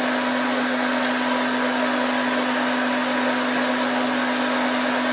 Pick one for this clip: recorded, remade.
recorded